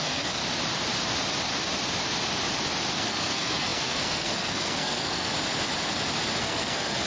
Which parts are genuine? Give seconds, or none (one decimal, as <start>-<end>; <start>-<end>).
0.4-2.9; 5.3-6.4